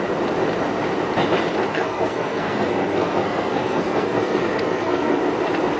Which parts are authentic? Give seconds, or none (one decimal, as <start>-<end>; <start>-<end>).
0.0-1.7; 5.2-5.8

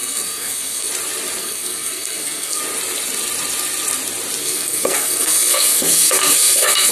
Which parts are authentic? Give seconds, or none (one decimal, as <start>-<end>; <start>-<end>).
0.9-1.4; 2.6-4.4

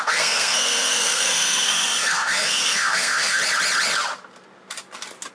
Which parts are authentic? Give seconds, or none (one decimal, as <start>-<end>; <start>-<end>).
3.4-5.3

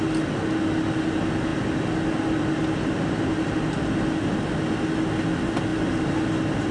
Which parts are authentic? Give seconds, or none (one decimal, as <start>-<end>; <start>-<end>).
0.0-6.7

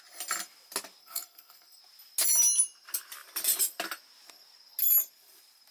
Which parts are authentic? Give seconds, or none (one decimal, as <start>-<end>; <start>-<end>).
0.0-1.0; 1.8-5.7

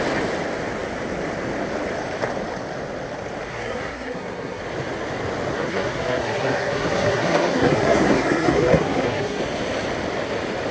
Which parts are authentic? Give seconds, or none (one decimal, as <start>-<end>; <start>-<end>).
0.0-3.5; 4.6-5.5; 9.4-10.7

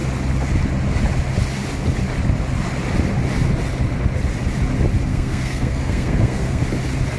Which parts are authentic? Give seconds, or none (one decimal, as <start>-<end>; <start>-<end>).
0.0-5.1; 6.6-7.2

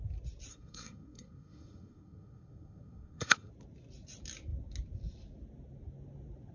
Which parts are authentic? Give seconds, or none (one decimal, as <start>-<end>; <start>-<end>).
0.0-0.5; 3.5-6.5